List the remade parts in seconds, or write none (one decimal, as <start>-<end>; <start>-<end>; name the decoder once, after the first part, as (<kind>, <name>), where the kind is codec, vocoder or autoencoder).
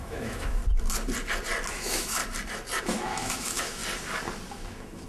0.0-0.6 (autoencoder, DAC-VAE); 1.7-2.2; 2.8-3.8; 4.5-5.1